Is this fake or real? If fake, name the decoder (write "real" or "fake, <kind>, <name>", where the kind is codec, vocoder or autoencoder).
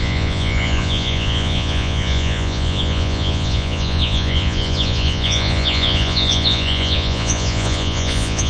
fake, vocoder, Vocos